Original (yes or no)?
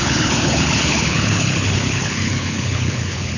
no